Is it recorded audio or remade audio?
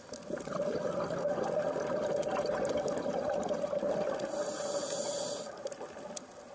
recorded